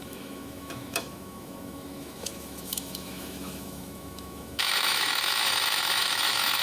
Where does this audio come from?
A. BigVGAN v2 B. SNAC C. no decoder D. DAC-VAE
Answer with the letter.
D